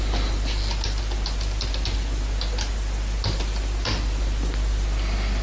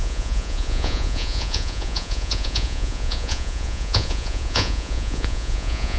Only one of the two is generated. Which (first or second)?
second